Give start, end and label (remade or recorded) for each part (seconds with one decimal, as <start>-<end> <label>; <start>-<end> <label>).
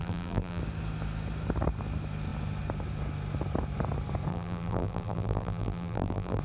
0.0-0.6 remade; 0.6-4.3 recorded; 4.3-6.4 remade